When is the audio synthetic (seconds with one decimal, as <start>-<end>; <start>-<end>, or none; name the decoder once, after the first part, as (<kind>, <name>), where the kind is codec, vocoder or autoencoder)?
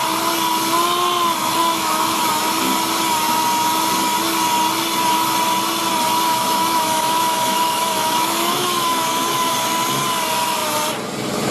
1.6-2.3 (autoencoder, DAC-VAE); 6.3-9.5